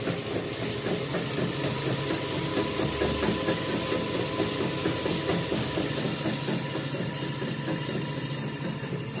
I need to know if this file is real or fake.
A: real